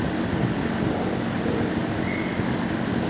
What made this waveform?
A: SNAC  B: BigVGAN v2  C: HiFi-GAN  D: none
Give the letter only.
D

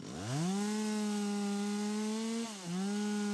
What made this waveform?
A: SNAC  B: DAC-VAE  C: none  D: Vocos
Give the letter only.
C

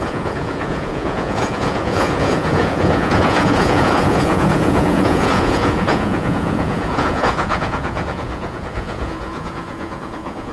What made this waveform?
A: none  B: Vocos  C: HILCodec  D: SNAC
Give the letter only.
B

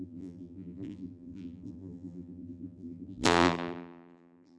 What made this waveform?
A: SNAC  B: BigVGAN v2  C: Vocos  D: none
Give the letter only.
B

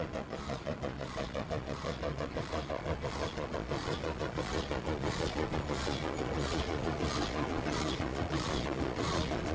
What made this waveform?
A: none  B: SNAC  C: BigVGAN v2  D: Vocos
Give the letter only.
D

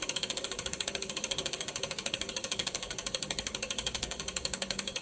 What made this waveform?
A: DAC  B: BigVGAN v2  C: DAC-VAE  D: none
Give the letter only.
A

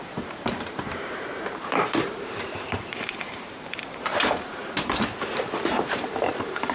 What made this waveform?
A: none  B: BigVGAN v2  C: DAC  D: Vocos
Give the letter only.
B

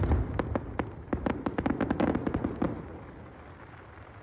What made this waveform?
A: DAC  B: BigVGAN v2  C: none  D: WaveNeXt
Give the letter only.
C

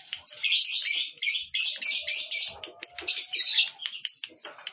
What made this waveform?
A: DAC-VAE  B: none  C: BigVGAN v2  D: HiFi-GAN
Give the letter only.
B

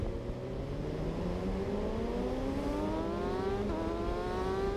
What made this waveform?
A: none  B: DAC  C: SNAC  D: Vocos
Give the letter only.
A